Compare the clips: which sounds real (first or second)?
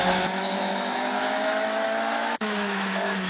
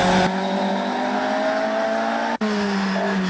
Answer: second